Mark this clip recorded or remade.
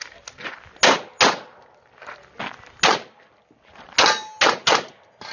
recorded